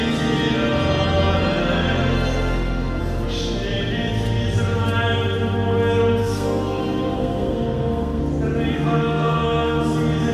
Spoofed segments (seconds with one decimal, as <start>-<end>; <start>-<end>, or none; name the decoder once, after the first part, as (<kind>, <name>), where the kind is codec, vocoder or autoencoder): 1.6-3.0 (codec, SNAC); 6.2-8.2; 8.7-9.8